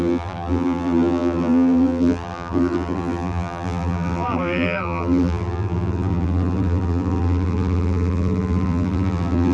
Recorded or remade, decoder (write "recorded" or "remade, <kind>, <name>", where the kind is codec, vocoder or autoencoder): remade, vocoder, BigVGAN v2